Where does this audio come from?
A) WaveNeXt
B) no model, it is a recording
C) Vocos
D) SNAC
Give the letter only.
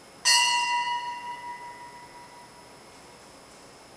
B